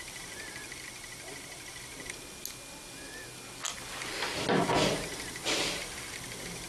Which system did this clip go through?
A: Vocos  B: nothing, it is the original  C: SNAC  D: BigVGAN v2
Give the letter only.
B